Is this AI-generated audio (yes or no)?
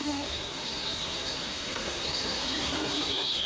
yes